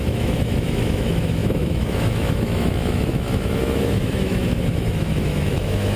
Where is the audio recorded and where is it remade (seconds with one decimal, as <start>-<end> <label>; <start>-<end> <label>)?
0.0-6.0 remade

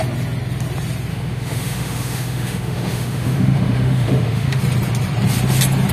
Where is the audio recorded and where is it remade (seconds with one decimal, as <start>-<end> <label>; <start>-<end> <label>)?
0.0-1.1 recorded; 1.1-4.6 remade; 4.6-5.9 recorded